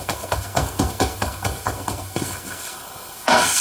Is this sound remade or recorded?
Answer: remade